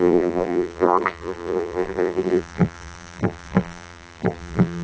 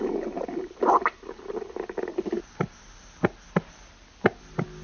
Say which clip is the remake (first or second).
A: first